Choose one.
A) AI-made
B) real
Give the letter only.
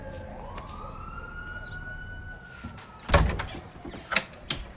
B